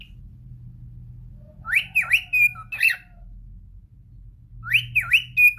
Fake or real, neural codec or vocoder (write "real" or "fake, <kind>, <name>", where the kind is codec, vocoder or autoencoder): real